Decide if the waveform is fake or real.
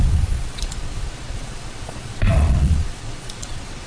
fake